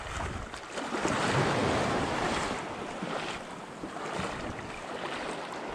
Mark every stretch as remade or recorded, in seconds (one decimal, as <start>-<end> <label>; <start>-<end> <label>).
0.0-5.7 recorded